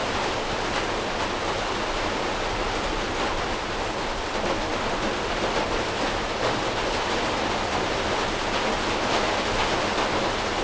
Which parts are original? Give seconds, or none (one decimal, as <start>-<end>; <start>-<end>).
0.0-10.6